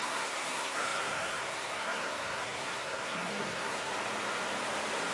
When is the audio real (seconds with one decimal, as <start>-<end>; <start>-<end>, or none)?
3.9-5.1